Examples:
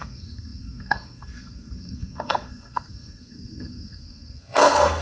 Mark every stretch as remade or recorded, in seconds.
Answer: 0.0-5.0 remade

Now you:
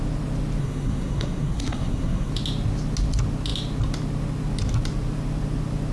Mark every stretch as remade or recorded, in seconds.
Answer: 0.0-0.6 recorded; 0.6-2.3 remade; 2.3-5.9 recorded